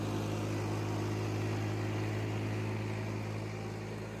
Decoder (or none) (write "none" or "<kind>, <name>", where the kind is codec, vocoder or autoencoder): none